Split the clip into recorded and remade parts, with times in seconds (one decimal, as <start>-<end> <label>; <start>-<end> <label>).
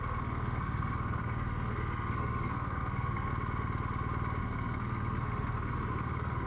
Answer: 0.0-3.3 remade; 3.3-4.4 recorded; 4.4-6.5 remade